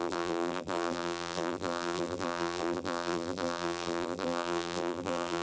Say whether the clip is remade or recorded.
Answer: remade